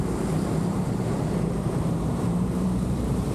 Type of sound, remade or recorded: remade